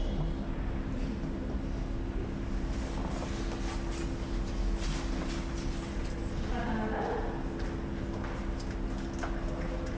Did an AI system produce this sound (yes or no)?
no